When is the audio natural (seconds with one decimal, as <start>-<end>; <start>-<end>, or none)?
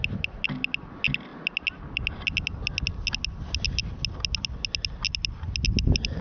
0.0-6.2